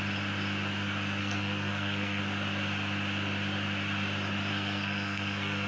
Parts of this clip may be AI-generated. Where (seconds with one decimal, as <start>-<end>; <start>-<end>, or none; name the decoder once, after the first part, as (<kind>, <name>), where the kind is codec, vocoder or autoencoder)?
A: 1.2-2.2 (codec, SNAC); 4.5-5.7